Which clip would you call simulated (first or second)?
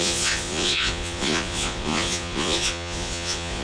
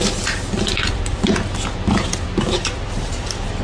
first